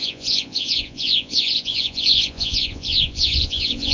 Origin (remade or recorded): remade